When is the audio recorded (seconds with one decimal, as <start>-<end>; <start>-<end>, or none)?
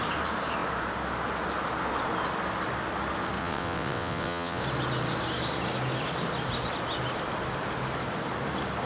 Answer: 0.0-3.4; 4.6-8.9